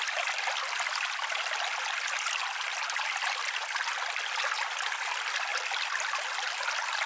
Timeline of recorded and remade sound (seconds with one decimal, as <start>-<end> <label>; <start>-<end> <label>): 0.0-7.1 recorded